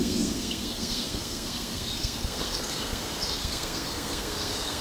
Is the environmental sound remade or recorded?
remade